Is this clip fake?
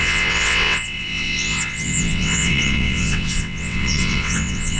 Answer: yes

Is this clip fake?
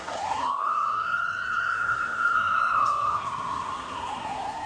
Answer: yes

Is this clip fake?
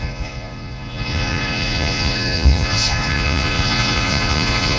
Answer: yes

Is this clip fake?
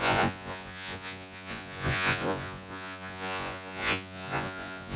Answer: yes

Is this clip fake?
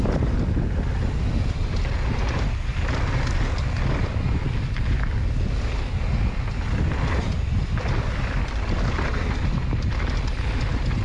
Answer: no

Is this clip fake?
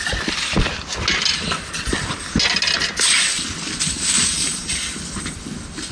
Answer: no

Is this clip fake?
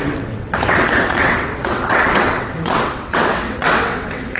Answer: yes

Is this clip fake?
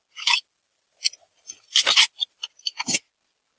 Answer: no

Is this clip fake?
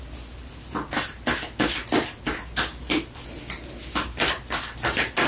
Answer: no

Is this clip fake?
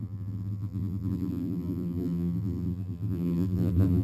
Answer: yes